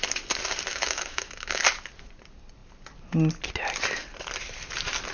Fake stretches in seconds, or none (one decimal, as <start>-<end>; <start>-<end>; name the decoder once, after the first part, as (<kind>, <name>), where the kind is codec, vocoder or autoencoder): 0.7-1.6 (autoencoder, DAC-VAE)